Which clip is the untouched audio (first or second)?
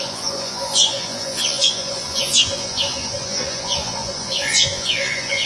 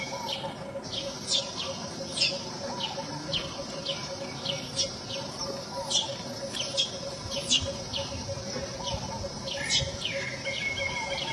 second